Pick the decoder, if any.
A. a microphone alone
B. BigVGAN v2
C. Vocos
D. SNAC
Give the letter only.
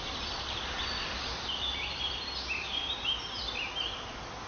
A